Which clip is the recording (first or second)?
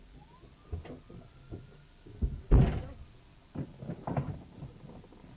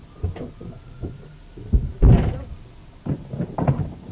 first